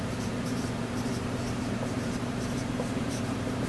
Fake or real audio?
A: fake